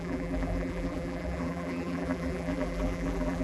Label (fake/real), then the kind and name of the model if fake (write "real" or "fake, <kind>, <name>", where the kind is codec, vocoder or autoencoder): fake, vocoder, BigVGAN v2